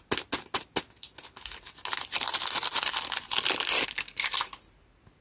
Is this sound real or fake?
real